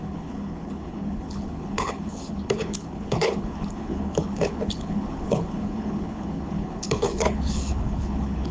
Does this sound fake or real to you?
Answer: fake